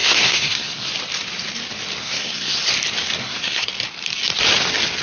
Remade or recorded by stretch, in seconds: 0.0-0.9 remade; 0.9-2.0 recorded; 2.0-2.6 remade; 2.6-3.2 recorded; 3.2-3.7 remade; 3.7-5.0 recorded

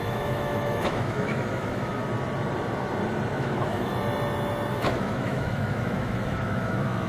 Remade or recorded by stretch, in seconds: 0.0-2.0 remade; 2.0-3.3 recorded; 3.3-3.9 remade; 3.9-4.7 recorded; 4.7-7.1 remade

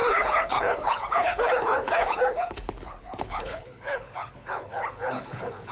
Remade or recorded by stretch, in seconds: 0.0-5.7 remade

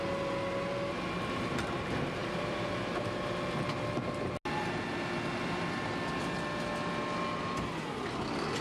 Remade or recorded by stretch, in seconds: 0.0-8.6 recorded

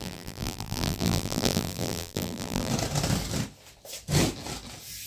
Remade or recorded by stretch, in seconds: 0.0-2.7 remade; 2.7-5.1 recorded

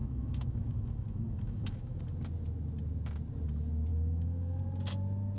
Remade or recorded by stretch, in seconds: 0.0-2.0 remade; 2.0-3.9 recorded; 3.9-4.6 remade; 4.6-5.4 recorded

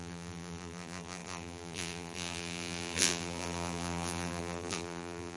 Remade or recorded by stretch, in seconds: 0.0-5.4 remade

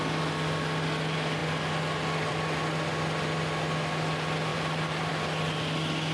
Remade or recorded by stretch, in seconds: 0.0-4.5 recorded; 4.5-5.1 remade; 5.1-6.1 recorded